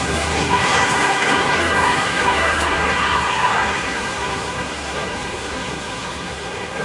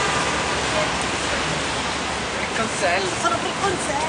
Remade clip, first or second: first